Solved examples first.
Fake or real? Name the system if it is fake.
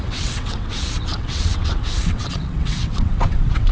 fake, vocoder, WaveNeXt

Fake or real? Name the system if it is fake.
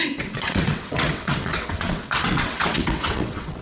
fake, vocoder, WaveNeXt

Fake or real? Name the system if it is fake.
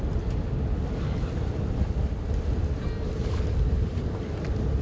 real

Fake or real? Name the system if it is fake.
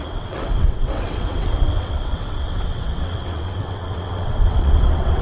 fake, vocoder, WaveNeXt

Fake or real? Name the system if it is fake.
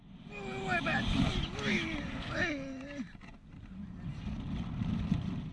real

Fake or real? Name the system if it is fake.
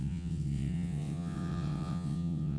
fake, vocoder, WaveNeXt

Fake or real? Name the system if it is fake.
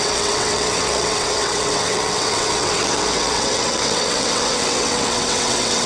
fake, vocoder, WaveNeXt